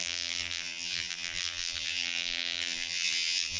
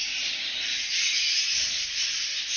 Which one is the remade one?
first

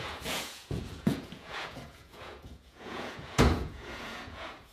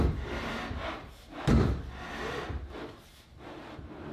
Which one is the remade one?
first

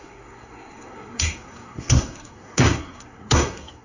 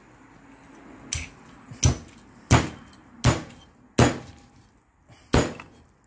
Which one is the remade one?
first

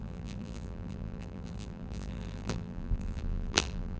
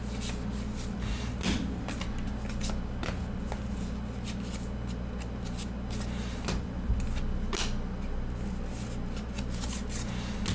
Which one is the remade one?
first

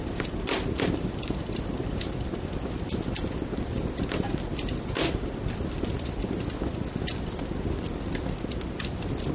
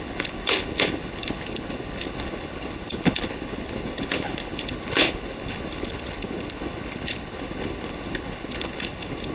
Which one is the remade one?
second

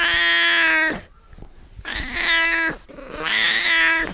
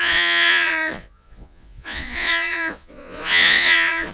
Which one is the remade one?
second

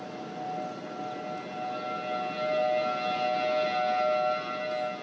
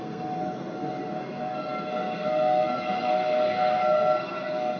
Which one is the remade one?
second